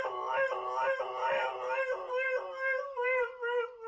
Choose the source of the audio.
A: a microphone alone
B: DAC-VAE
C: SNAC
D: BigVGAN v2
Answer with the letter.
A